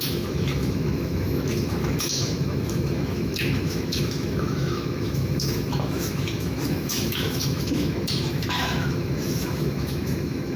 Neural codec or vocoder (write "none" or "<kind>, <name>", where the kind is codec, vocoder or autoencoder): autoencoder, DAC-VAE